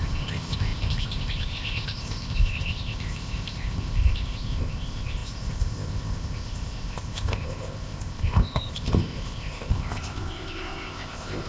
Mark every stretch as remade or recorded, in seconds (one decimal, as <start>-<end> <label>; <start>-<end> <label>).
0.0-11.5 remade